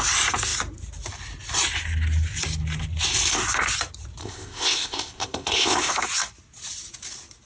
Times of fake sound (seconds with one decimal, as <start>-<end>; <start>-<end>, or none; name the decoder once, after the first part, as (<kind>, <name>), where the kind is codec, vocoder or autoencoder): 4.2-5.9 (codec, ZipCodec)